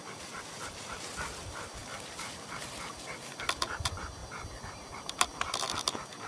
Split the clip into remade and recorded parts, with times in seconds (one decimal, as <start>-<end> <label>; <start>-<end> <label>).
0.0-6.3 recorded